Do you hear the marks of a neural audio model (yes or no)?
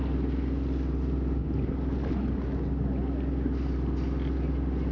no